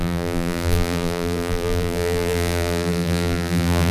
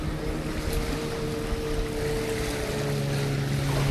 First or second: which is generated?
first